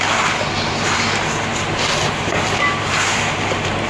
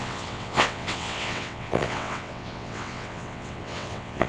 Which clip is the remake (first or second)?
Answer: second